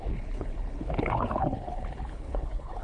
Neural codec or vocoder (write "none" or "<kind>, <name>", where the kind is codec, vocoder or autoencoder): codec, HILCodec